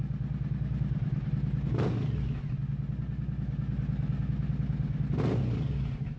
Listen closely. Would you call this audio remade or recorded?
recorded